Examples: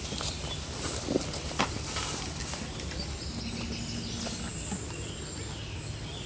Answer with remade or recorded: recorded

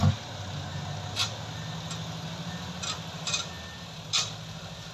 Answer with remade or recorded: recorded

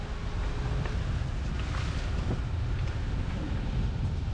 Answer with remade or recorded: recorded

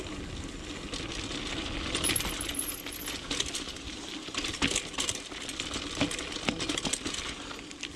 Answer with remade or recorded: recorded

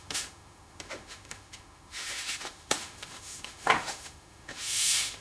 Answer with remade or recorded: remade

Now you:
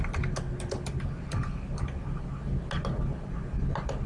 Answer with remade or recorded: recorded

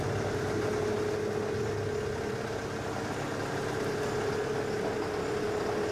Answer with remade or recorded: recorded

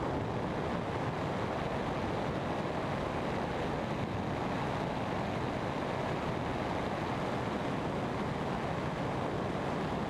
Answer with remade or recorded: recorded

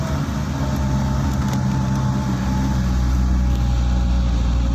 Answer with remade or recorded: recorded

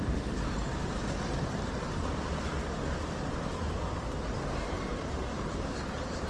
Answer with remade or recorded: recorded